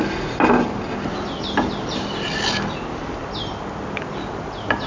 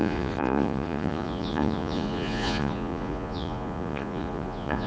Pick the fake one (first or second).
second